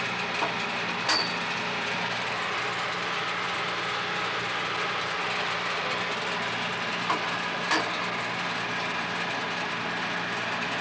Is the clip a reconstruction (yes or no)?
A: no